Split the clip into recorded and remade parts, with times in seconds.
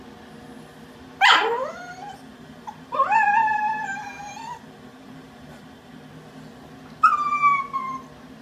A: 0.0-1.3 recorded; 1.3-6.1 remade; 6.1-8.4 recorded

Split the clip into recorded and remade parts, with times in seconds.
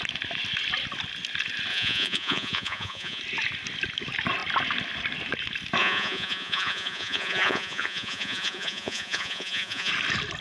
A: 0.0-1.7 recorded; 1.7-3.2 remade; 3.2-5.8 recorded; 5.8-9.9 remade; 9.9-10.4 recorded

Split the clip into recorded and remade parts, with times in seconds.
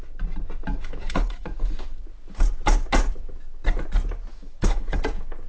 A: 0.0-0.7 recorded; 0.7-2.0 remade; 2.0-4.3 recorded; 4.3-5.0 remade; 5.0-5.5 recorded